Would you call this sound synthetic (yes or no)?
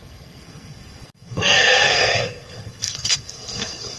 yes